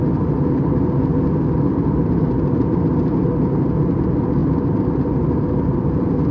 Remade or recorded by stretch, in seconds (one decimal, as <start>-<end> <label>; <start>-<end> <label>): 0.0-6.3 recorded